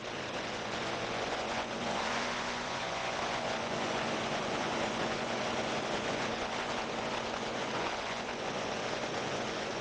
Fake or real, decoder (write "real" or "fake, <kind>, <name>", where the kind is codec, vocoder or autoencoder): fake, vocoder, Vocos